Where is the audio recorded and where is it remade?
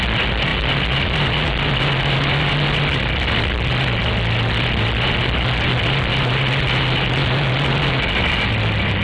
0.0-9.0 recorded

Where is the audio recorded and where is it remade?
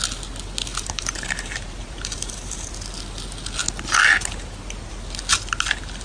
0.0-0.7 recorded; 0.7-2.7 remade; 2.7-6.0 recorded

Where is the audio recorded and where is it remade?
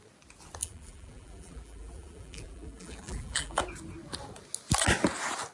0.0-0.6 recorded; 0.6-3.6 remade; 3.6-5.5 recorded